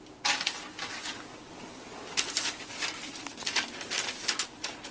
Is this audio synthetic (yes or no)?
no